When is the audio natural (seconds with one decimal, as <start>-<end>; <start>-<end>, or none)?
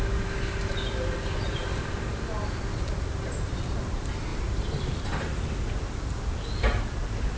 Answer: 0.0-4.3; 5.4-7.4